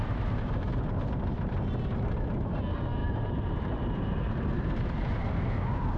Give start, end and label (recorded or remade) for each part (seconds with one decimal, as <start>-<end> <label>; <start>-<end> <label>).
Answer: 0.0-3.0 recorded; 3.0-4.4 remade; 4.4-6.0 recorded